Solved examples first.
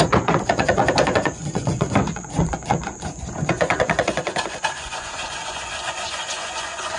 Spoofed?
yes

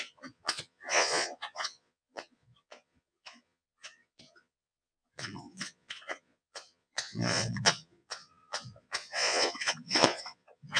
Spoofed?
yes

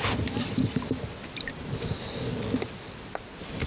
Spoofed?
no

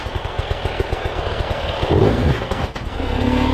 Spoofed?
yes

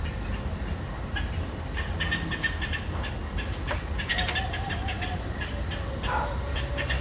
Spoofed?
no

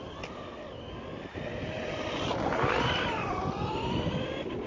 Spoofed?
no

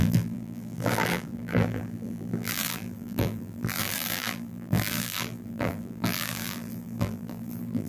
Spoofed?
yes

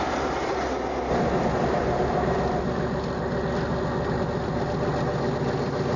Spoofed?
no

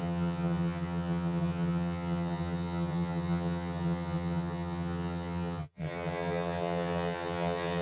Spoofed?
yes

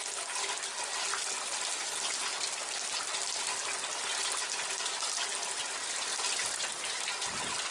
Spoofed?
no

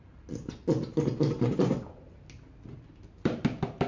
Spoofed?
no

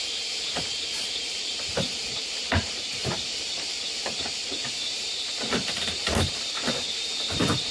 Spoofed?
yes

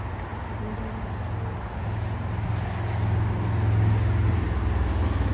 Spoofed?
no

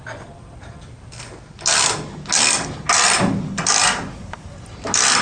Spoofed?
no